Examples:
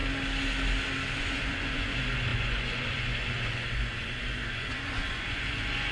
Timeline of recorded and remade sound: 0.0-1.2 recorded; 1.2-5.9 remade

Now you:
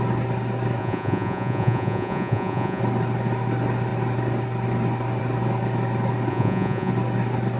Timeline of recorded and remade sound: 0.0-0.8 recorded; 0.8-2.8 remade; 2.8-6.3 recorded; 6.3-6.9 remade; 6.9-7.6 recorded

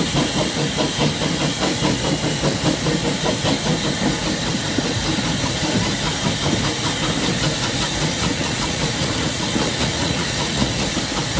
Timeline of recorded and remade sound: 0.0-8.1 recorded; 8.1-11.0 remade; 11.0-11.4 recorded